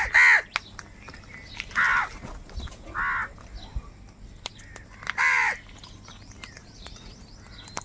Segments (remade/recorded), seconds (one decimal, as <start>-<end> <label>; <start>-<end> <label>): 0.0-6.6 recorded; 6.6-7.2 remade; 7.2-7.8 recorded